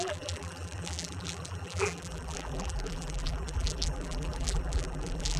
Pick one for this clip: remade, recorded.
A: remade